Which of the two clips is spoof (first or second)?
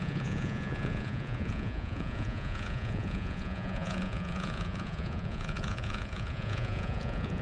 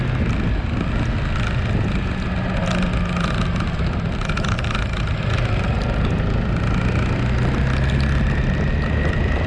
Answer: first